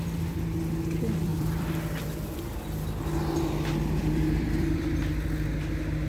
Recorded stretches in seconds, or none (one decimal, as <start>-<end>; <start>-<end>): 0.0-1.3; 2.5-4.0; 4.9-6.1